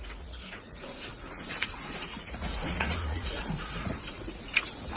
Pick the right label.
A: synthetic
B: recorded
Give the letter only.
A